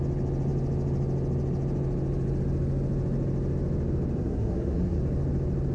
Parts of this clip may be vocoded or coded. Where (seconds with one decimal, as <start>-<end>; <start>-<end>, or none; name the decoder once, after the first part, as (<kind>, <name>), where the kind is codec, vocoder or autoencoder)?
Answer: 4.2-5.0 (codec, SNAC)